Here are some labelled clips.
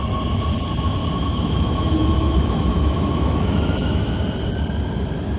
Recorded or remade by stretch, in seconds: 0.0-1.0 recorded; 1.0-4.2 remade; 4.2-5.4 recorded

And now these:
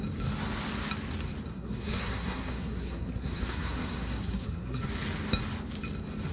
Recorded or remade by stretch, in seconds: 0.0-1.5 recorded; 1.5-4.8 remade; 4.8-6.3 recorded

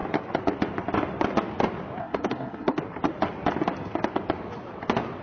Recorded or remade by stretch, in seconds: 0.0-2.0 recorded; 2.0-2.8 remade; 2.8-5.2 recorded

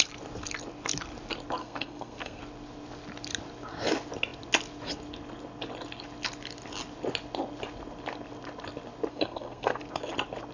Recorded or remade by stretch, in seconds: 0.0-1.6 recorded; 1.6-2.4 remade; 2.4-9.1 recorded; 9.1-9.8 remade; 9.8-10.5 recorded

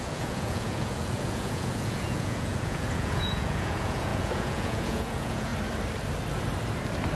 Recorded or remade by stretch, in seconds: 0.0-5.5 remade; 5.5-7.2 recorded

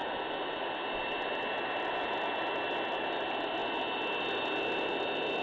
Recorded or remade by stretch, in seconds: 0.0-5.4 recorded

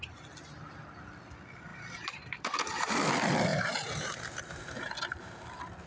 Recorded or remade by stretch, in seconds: 0.0-1.7 recorded; 1.7-2.9 remade; 2.9-3.5 recorded; 3.5-5.4 remade; 5.4-5.9 recorded